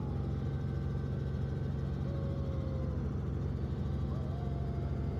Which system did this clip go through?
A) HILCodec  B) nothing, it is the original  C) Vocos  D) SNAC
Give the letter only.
B